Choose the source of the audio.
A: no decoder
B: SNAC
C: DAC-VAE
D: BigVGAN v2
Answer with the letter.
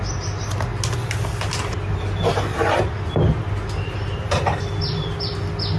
A